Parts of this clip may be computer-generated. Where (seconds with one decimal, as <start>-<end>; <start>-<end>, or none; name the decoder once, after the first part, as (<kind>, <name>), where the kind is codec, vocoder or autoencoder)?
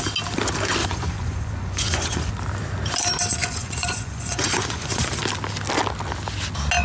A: 0.8-2.3 (vocoder, Vocos); 3.3-5.2